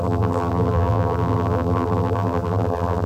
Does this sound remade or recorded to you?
remade